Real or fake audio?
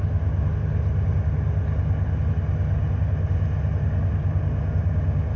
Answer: real